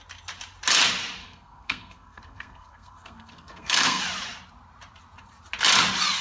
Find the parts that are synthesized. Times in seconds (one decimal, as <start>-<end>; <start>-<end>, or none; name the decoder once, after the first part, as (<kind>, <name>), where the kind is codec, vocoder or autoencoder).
1.2-4.0 (codec, SNAC)